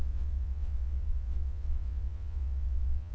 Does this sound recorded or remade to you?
remade